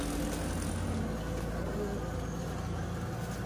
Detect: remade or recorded recorded